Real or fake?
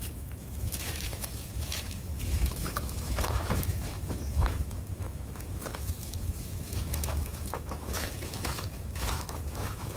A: fake